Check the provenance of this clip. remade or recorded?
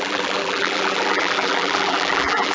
remade